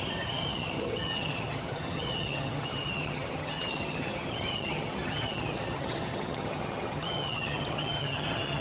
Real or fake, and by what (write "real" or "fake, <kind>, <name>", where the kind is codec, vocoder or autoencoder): fake, vocoder, HiFi-GAN